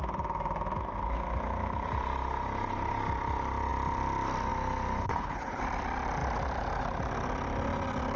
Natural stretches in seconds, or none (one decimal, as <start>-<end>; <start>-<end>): 0.0-5.0; 5.6-8.2